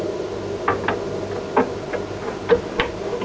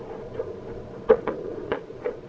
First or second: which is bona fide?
first